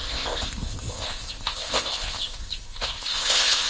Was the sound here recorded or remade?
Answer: remade